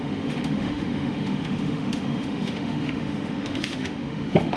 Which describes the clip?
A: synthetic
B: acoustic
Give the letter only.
A